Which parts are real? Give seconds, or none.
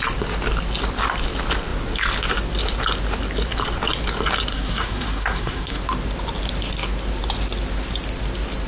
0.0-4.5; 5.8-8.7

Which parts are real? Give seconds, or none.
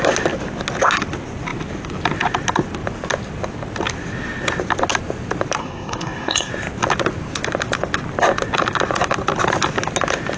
0.0-5.6; 6.5-10.4